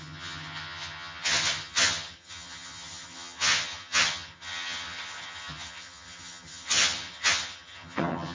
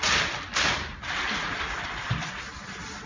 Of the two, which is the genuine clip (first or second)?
second